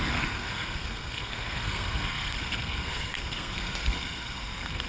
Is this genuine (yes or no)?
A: no